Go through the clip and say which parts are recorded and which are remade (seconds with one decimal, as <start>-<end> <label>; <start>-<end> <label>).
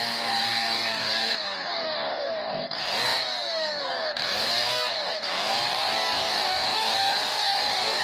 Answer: 0.0-8.0 remade